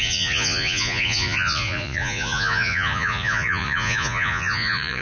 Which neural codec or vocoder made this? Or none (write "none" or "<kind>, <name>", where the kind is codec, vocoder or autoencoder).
vocoder, Vocos